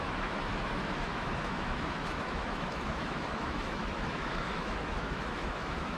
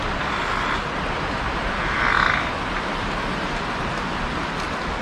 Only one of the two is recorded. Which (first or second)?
second